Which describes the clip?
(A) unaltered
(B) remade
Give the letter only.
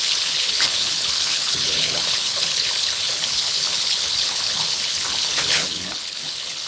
B